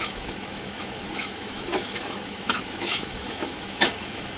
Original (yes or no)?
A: no